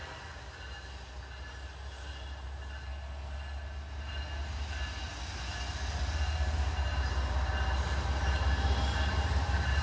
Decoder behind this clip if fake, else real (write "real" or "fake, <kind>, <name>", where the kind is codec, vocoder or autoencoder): real